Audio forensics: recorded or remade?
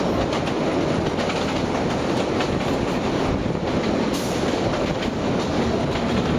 recorded